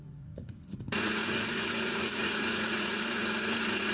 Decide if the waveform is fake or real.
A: fake